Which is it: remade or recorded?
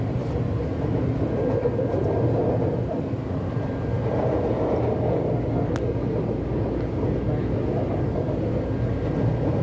recorded